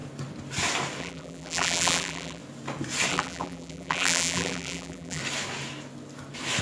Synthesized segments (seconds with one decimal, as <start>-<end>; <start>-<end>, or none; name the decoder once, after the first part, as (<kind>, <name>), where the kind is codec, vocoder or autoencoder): 1.0-2.4 (vocoder, BigVGAN v2); 3.1-5.2